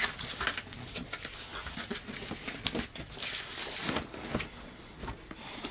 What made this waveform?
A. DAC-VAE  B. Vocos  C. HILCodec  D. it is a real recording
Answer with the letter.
D